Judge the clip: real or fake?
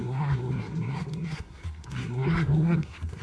fake